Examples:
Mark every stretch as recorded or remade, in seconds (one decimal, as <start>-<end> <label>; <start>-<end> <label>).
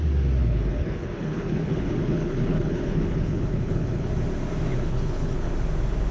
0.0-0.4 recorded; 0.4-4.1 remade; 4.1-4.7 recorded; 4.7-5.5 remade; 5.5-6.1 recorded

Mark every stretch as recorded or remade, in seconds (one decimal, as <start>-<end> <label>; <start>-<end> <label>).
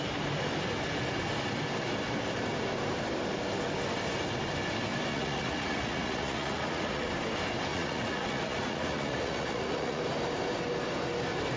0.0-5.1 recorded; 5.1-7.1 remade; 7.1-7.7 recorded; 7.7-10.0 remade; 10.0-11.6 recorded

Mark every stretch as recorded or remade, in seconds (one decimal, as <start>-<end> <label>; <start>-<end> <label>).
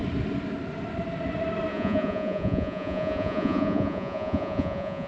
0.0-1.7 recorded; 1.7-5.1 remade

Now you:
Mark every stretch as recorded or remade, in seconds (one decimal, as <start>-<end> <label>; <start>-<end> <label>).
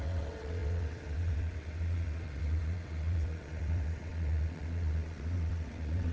0.0-6.1 remade